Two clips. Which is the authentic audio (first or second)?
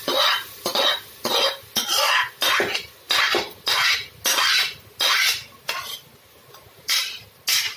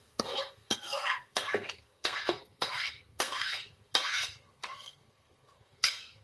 first